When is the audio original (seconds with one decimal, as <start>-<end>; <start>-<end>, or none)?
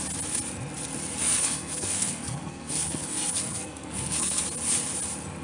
0.0-1.2; 4.4-5.4